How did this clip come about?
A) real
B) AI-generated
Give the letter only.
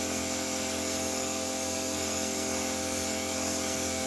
B